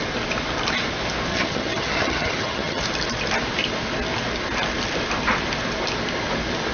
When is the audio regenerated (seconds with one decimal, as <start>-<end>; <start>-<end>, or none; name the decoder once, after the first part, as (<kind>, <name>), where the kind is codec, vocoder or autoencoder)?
1.3-2.8 (vocoder, HiFi-GAN)